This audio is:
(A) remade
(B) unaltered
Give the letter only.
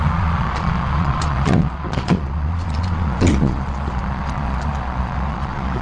A